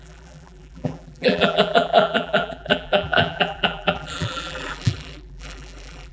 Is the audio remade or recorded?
remade